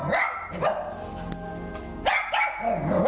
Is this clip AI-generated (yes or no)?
no